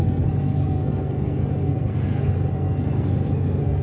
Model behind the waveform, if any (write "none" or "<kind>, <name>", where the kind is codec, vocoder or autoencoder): codec, SNAC